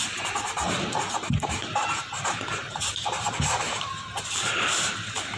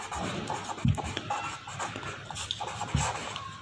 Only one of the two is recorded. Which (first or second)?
second